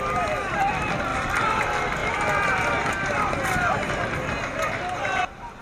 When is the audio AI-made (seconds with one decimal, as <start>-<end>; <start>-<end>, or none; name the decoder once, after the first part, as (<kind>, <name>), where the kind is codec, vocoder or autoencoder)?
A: none